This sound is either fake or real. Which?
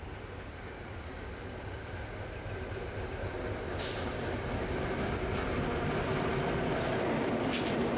real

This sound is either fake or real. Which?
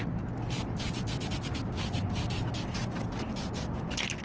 real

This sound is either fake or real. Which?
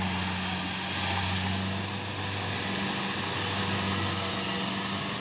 real